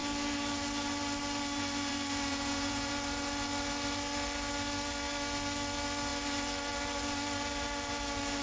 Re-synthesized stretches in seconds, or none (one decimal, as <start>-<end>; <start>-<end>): 2.3-2.9